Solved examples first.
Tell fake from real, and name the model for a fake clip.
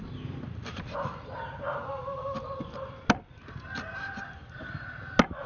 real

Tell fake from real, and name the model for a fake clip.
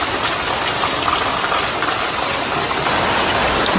real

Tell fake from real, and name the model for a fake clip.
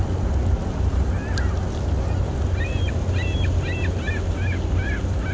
real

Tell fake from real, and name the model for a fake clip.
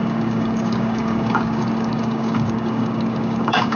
fake, codec, DAC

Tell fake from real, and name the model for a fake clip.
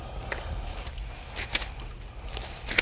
real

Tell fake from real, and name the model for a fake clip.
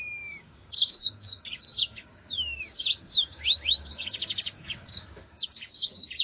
fake, codec, DAC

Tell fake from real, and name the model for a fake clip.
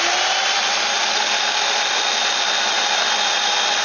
real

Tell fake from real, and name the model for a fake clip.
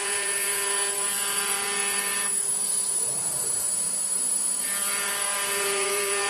fake, vocoder, Vocos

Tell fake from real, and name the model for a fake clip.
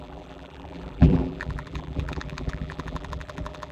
fake, vocoder, BigVGAN v2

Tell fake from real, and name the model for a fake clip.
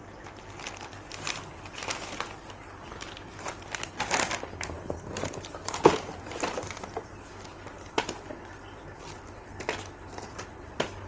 real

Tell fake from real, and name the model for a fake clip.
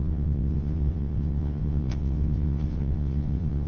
fake, vocoder, WaveNeXt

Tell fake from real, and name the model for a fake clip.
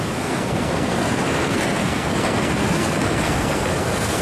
fake, codec, SNAC